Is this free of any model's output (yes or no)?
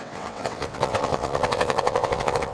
no